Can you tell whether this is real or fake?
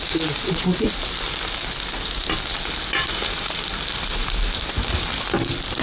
real